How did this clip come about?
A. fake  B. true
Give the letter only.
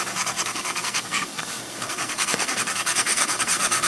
A